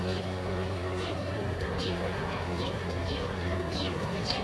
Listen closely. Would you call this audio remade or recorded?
remade